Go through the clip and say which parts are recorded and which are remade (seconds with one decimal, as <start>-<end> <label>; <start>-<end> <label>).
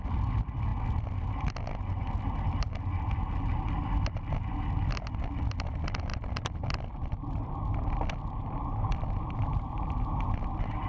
0.0-0.7 remade; 0.7-5.4 recorded; 5.4-10.9 remade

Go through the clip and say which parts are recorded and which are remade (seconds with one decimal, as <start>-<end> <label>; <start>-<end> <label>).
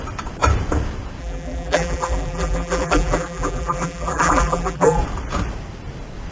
0.0-1.2 recorded; 1.2-5.0 remade; 5.0-6.3 recorded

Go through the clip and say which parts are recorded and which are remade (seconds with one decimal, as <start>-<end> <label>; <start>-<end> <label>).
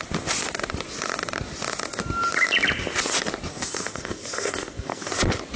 0.0-3.5 recorded; 3.5-5.1 remade; 5.1-5.6 recorded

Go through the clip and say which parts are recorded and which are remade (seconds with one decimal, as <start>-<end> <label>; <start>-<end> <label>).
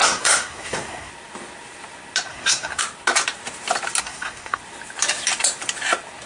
0.0-1.1 remade; 1.1-2.3 recorded; 2.3-2.8 remade; 2.8-4.0 recorded; 4.0-4.6 remade; 4.6-6.3 recorded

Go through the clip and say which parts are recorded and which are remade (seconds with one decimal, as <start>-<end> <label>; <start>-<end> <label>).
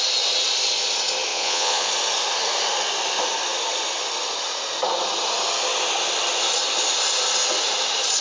0.0-1.3 recorded; 1.3-1.9 remade; 1.9-8.2 recorded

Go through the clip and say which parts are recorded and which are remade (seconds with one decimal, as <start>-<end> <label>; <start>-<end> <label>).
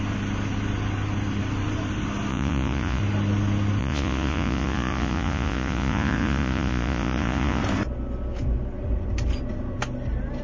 0.0-2.3 recorded; 2.3-3.0 remade; 3.0-3.8 recorded; 3.8-7.6 remade; 7.6-10.4 recorded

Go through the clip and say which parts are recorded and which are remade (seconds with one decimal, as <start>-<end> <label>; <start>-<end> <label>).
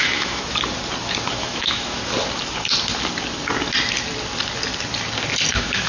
0.0-0.4 remade; 0.4-1.3 recorded; 1.3-2.0 remade; 2.0-5.5 recorded; 5.5-5.9 remade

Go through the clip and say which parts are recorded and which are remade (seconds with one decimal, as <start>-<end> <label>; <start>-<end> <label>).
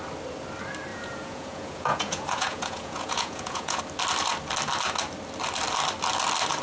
0.0-0.9 recorded; 0.9-3.8 remade; 3.8-6.6 recorded